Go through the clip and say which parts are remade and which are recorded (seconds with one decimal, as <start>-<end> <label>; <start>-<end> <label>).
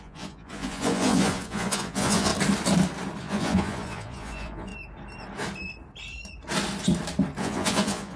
0.0-2.3 remade; 2.3-3.2 recorded; 3.2-4.7 remade; 4.7-7.4 recorded; 7.4-8.2 remade